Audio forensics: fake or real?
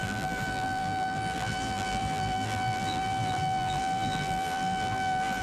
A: fake